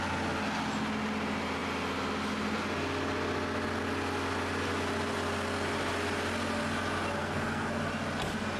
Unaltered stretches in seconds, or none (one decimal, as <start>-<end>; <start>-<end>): 0.0-7.2; 7.8-8.6